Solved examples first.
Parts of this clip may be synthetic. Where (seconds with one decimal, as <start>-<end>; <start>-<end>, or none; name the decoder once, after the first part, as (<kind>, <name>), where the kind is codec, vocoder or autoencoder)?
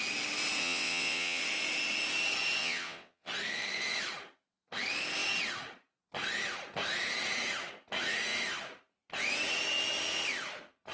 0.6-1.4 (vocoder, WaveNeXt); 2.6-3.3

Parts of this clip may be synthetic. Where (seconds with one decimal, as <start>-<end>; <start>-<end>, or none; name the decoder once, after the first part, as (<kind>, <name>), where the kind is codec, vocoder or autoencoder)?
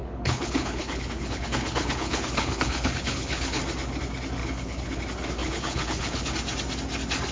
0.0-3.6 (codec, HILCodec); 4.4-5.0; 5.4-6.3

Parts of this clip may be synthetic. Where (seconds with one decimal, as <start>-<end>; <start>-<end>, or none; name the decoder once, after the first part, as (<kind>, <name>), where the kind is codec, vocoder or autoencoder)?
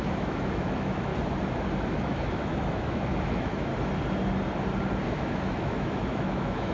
0.0-1.1 (autoencoder, DAC-VAE); 1.9-3.7; 5.1-6.7